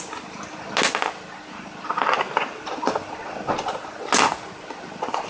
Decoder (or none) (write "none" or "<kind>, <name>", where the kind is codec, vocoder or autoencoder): none